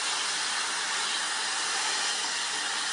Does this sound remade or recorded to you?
recorded